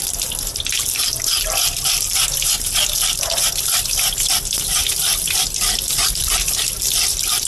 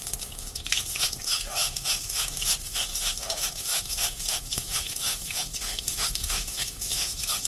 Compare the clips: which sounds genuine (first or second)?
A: first